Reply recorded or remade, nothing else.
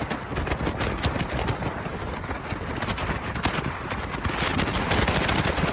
recorded